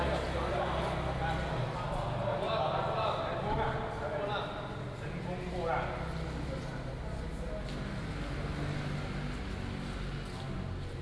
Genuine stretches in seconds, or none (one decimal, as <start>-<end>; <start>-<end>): 0.0-11.0